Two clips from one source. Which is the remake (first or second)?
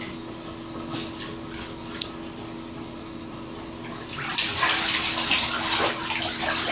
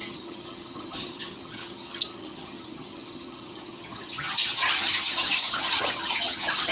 second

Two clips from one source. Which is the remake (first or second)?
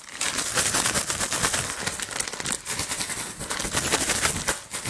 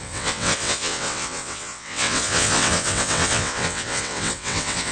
second